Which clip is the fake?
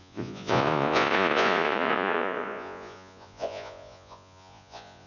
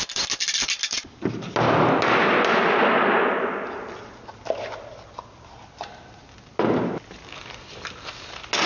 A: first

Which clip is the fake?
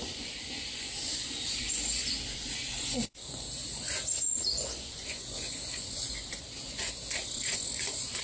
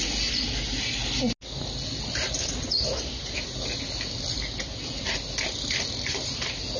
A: first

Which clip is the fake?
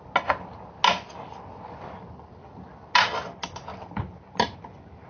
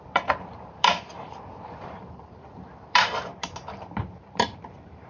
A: second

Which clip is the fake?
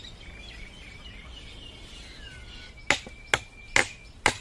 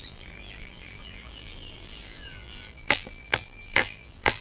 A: second